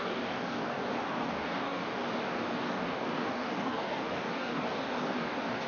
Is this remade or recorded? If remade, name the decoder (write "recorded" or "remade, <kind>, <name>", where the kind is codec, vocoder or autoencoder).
remade, codec, DAC